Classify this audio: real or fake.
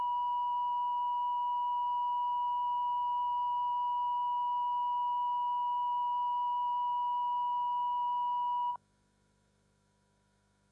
fake